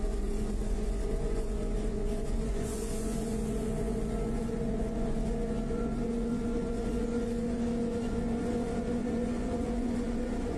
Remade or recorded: remade